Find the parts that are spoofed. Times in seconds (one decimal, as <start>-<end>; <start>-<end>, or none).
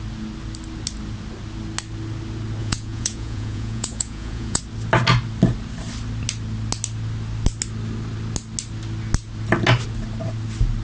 2.6-4.6